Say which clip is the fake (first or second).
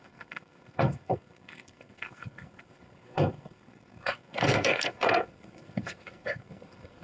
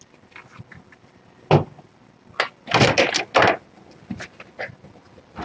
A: first